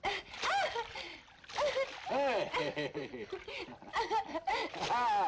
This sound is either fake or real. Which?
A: real